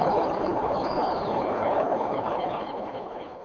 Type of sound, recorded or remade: remade